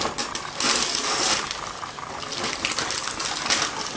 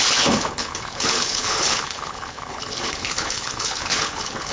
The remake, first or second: second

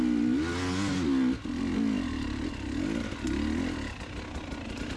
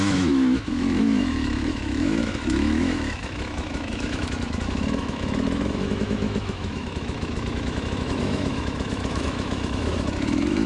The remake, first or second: second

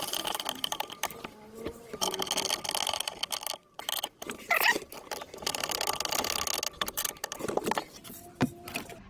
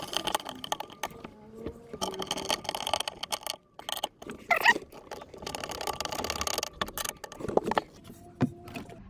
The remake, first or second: first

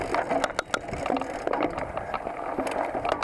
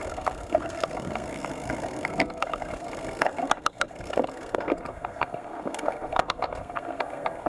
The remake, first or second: second